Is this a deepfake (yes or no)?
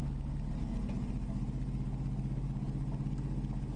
no